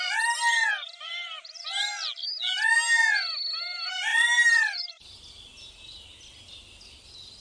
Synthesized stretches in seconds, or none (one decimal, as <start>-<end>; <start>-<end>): 0.8-1.7; 4.1-4.9